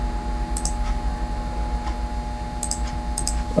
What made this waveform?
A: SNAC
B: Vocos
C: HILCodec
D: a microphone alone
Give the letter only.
D